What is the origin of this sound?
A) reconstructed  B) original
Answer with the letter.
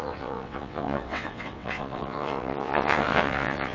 A